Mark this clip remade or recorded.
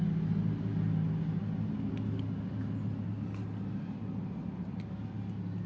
recorded